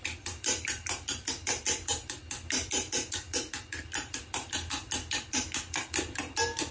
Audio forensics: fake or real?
real